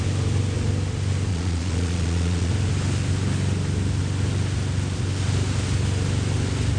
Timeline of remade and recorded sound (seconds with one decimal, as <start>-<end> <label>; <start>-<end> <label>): 0.0-1.3 recorded; 1.3-2.5 remade; 2.5-6.8 recorded